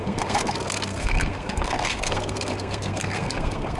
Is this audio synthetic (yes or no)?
yes